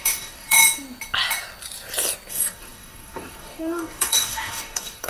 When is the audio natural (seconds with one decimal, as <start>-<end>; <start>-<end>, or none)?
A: 0.6-2.3